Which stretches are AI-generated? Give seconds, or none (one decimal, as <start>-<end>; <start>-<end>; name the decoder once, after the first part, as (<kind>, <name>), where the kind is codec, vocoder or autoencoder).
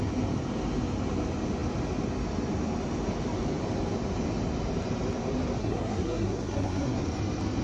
5.6-7.0 (codec, SNAC)